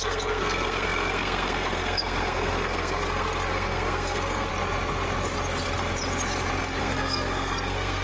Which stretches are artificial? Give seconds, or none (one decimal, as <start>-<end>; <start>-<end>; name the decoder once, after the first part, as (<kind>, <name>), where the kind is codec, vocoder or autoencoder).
0.0-4.5 (codec, SNAC); 6.8-8.0